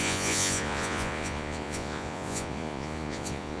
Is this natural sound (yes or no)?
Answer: no